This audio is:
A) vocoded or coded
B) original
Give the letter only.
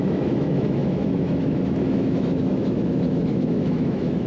A